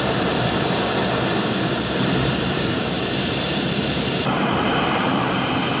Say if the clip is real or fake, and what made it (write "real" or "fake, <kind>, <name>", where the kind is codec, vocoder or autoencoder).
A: fake, vocoder, BigVGAN v2